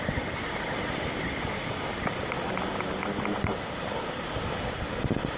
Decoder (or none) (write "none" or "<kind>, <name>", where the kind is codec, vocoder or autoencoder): none